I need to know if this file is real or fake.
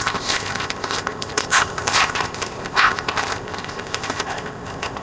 fake